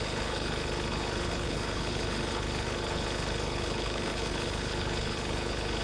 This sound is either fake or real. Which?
fake